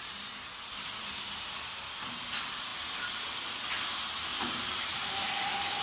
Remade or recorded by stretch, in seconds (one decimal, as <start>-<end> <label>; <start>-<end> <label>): 0.0-4.3 recorded; 4.3-5.3 remade; 5.3-5.8 recorded